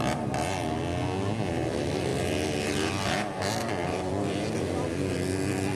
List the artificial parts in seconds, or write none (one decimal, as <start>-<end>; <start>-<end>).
3.8-5.1